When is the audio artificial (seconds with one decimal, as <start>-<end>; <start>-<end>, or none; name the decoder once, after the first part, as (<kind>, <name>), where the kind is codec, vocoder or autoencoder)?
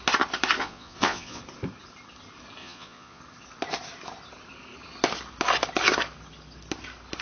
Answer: 0.6-1.4 (vocoder, Vocos); 2.6-3.2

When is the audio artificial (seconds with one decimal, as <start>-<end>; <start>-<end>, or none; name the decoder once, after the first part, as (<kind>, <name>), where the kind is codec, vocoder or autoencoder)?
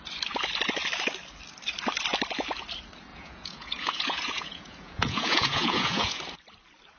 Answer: 3.1-6.2 (vocoder, Vocos)